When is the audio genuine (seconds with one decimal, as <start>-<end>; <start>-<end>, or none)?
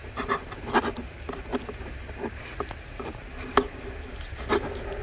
0.8-1.5; 4.5-5.0